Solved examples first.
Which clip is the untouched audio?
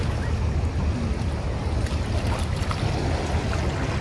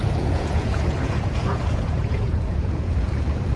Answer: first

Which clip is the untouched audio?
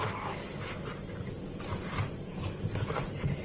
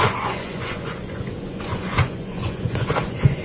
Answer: first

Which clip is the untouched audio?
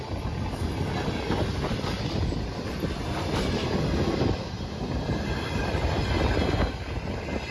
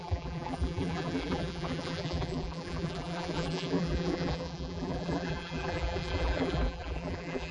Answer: first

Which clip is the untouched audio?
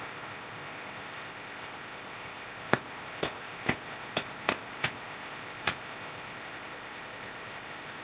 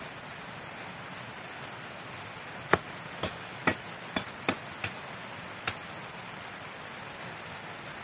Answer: second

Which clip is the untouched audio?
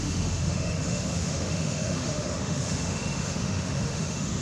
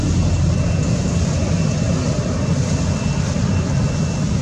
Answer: second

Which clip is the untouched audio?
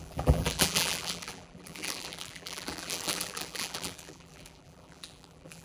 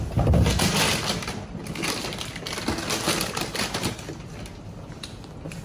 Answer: second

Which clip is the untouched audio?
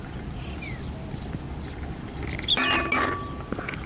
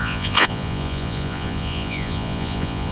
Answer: first